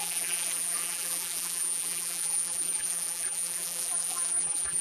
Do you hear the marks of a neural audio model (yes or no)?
yes